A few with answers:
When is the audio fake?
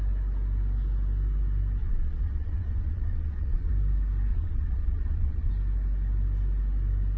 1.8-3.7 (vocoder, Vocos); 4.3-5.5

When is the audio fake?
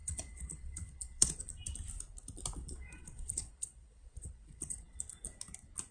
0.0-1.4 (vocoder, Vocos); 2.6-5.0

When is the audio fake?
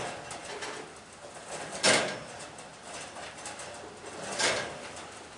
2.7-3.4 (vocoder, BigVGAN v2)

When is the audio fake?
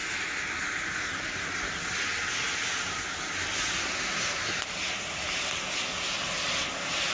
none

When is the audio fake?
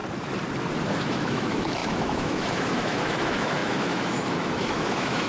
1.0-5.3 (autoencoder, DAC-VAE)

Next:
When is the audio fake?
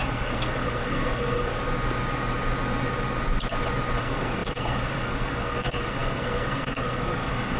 0.0-1.6 (codec, SNAC); 4.0-7.6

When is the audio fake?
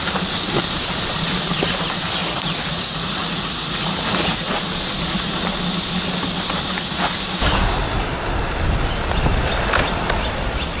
2.2-4.5 (vocoder, Vocos)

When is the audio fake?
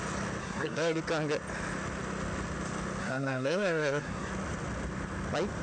0.4-1.0 (codec, SNAC); 3.0-4.3